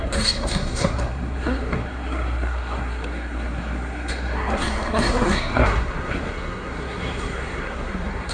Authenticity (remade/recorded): remade